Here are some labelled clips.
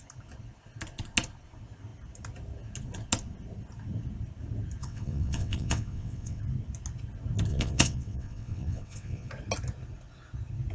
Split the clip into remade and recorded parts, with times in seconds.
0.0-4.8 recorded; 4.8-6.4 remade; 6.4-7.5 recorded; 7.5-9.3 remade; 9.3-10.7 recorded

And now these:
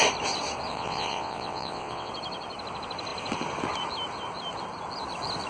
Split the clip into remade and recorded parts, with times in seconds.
0.0-0.7 recorded; 0.7-2.1 remade; 2.1-5.5 recorded

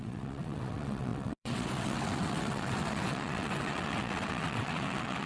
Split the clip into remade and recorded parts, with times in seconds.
0.0-5.3 remade

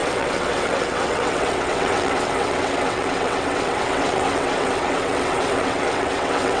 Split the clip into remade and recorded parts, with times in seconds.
0.0-6.6 remade

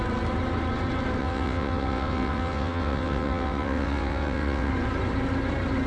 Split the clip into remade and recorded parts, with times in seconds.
0.0-1.2 recorded; 1.2-4.7 remade; 4.7-5.9 recorded

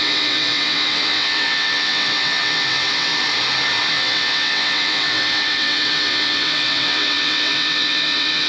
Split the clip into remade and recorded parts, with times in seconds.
0.0-3.1 remade; 3.1-3.9 recorded; 3.9-8.5 remade